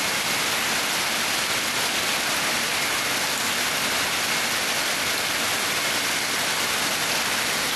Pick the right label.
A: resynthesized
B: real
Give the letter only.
B